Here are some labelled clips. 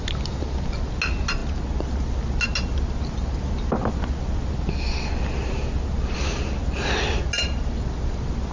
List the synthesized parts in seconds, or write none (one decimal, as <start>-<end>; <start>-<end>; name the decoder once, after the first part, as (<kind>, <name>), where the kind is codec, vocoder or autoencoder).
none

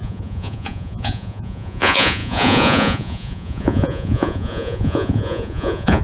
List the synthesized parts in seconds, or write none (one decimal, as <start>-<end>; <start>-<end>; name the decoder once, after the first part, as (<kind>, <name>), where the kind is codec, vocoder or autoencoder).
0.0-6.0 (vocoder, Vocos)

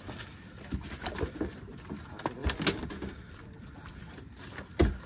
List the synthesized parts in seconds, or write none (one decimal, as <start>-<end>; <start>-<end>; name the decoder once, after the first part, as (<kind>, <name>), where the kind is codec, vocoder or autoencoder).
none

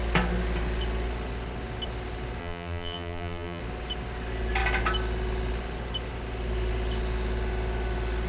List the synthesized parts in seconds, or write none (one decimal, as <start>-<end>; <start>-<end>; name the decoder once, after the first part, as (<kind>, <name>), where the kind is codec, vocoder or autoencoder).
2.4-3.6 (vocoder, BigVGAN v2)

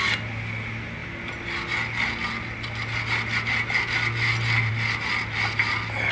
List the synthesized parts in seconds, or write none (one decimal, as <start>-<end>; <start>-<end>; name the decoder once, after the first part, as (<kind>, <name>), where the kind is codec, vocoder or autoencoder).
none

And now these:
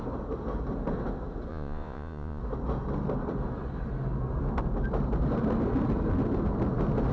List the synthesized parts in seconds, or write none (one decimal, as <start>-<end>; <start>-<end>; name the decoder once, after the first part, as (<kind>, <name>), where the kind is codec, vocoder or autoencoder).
1.5-2.4 (vocoder, Vocos)

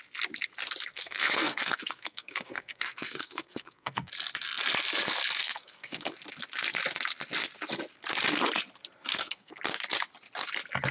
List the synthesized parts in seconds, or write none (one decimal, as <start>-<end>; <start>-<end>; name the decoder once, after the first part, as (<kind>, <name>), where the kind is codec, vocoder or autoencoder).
0.9-4.1 (codec, SNAC); 5.4-6.1; 9.1-9.6